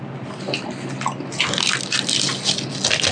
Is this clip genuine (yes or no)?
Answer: yes